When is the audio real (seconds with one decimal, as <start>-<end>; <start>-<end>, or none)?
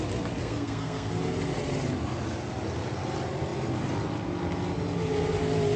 0.0-0.4; 1.1-5.8